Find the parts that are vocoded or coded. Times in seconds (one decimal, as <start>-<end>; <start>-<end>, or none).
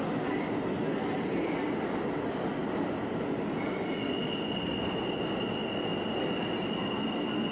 none